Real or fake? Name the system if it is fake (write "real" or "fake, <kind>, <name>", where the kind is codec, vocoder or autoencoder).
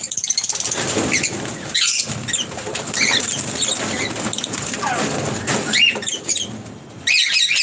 real